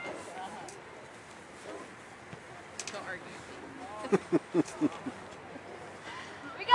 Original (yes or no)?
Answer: yes